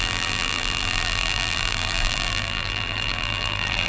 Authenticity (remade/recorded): remade